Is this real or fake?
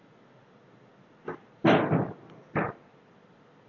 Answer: real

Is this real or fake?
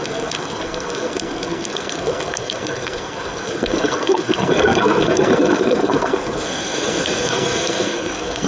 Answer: fake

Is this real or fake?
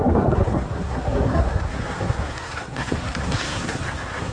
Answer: fake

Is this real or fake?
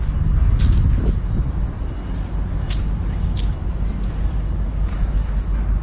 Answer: real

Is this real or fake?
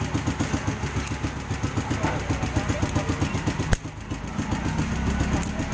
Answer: real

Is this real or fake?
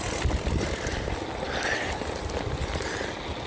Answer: real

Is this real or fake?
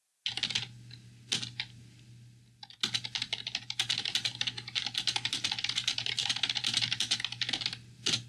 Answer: real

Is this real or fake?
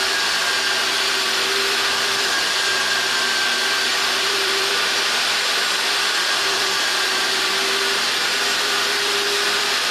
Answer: fake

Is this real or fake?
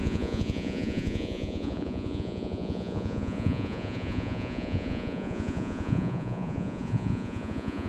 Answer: fake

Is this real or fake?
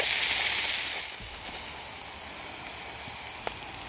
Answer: real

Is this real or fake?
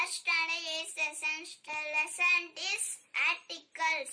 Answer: real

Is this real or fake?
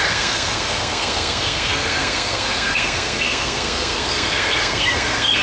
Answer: fake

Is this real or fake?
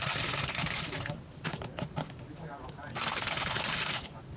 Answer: real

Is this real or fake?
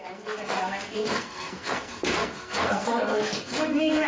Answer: fake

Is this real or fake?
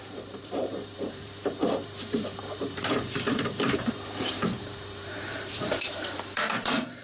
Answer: fake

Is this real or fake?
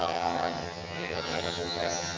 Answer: fake